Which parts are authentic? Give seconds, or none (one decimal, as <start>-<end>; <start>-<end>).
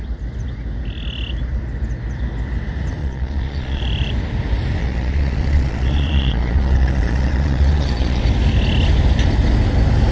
0.0-3.0; 3.8-4.8; 8.2-10.1